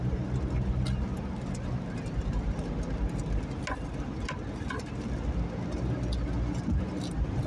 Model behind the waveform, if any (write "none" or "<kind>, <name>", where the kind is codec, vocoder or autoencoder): none